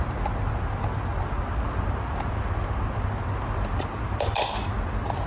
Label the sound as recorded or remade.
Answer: recorded